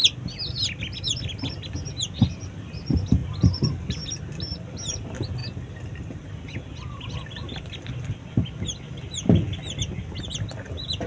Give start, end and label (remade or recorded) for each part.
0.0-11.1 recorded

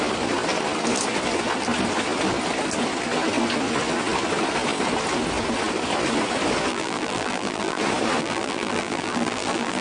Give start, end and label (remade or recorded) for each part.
0.0-6.7 recorded; 6.7-7.8 remade; 7.8-8.2 recorded; 8.2-9.8 remade

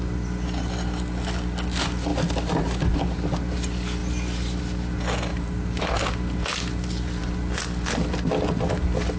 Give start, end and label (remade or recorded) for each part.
0.0-2.1 recorded; 2.1-2.8 remade; 2.8-5.3 recorded; 5.3-5.8 remade; 5.8-9.2 recorded

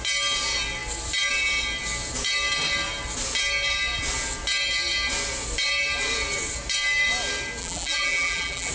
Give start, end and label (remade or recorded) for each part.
0.0-7.6 recorded; 7.6-8.7 remade

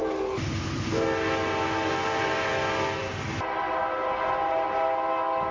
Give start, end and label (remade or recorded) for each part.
0.0-5.5 recorded